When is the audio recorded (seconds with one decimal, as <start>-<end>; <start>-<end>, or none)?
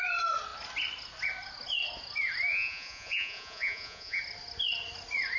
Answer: 0.0-2.5; 4.2-5.4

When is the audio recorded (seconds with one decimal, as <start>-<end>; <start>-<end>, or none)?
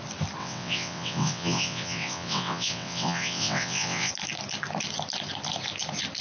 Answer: 0.0-0.4; 4.1-6.2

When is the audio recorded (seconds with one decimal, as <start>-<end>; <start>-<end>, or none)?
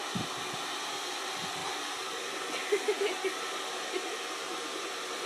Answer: 0.0-5.3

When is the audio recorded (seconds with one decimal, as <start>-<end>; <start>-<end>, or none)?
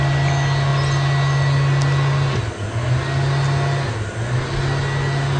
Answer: 0.0-5.4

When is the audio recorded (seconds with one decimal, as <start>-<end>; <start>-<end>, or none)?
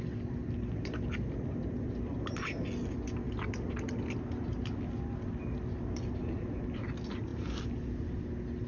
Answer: 0.0-8.7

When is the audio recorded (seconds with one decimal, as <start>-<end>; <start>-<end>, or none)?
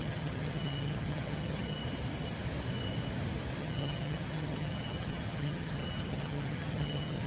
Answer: 1.8-3.6